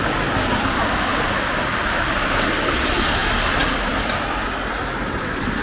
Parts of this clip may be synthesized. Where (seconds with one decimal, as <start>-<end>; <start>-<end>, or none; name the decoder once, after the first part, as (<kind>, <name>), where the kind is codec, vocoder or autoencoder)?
none